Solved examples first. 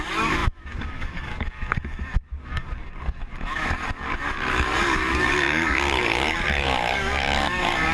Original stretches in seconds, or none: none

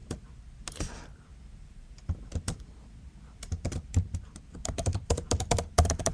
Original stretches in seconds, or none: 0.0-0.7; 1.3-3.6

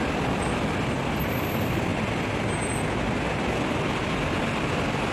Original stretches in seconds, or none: 1.9-3.7

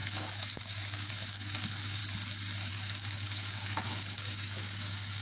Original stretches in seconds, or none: 2.0-2.7

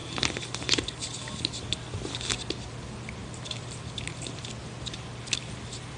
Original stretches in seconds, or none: 0.0-6.0